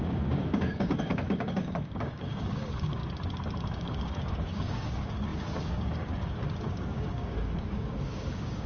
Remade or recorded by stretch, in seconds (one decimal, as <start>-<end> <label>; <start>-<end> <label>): 0.0-3.0 remade; 3.0-3.6 recorded; 3.6-8.7 remade